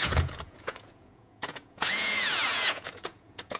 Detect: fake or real fake